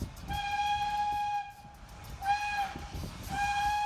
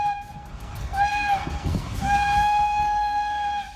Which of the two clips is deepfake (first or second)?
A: second